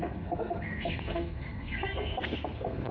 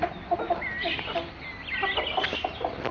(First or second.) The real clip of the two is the second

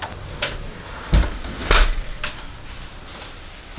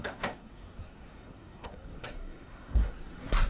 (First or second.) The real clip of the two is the first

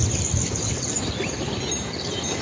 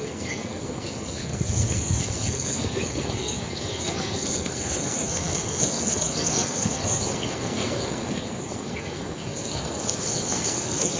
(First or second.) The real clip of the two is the first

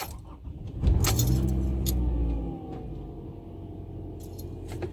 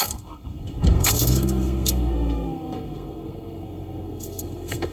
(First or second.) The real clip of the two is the first